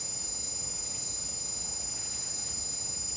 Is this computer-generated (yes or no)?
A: no